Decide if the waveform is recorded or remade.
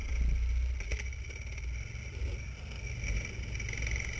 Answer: recorded